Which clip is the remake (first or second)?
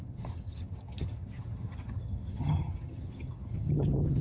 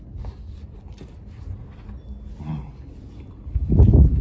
first